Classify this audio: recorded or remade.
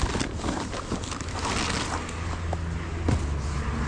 recorded